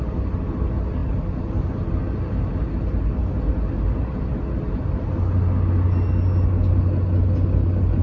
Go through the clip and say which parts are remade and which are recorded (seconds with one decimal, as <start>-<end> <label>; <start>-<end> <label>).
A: 0.0-8.0 recorded